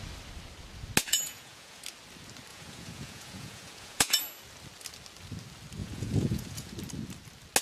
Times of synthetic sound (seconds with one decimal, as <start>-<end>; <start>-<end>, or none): 1.0-1.8; 2.5-4.2; 5.8-6.7